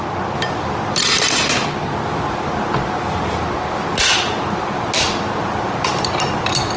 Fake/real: real